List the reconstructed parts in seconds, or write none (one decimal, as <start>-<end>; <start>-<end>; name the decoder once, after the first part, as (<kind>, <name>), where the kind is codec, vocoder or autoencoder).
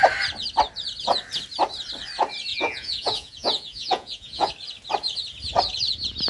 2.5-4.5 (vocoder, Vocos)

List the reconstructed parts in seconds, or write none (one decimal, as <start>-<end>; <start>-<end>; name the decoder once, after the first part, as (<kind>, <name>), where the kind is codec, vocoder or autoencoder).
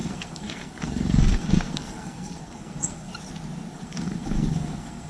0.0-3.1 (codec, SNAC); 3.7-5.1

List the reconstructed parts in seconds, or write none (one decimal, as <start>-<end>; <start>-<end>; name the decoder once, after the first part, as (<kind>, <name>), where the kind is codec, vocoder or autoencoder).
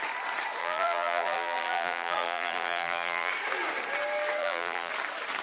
0.6-3.3 (vocoder, BigVGAN v2); 4.4-4.9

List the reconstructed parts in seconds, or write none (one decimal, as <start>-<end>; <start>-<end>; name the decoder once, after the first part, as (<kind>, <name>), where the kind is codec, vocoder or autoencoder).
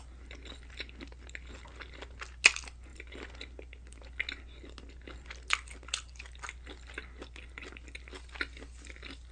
none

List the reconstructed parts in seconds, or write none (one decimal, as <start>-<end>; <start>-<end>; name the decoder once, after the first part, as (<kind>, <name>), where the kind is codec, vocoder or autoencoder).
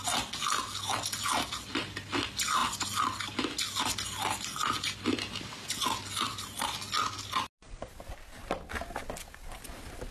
none